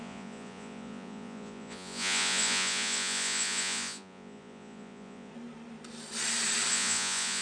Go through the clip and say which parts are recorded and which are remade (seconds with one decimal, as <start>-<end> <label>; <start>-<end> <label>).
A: 0.0-5.3 remade; 5.3-6.7 recorded; 6.7-7.4 remade